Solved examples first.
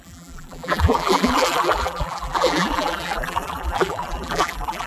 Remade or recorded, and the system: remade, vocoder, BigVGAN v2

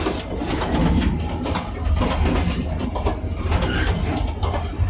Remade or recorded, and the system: recorded